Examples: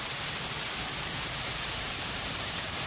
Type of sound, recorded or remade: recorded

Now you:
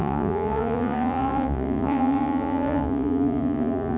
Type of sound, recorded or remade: remade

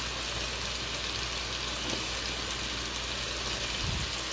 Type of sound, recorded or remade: recorded